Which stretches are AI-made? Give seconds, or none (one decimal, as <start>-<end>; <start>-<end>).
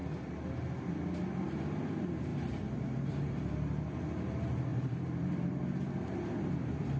0.0-0.5; 2.3-3.4; 4.7-5.5